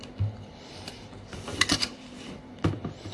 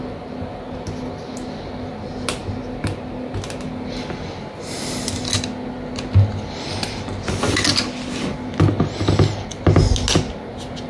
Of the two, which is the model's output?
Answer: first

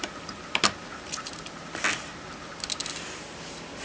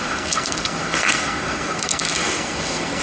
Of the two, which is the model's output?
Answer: second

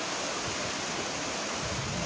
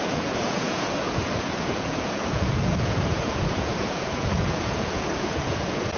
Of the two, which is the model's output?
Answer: second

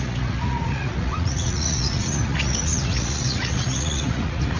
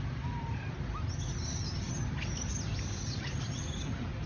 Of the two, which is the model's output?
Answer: first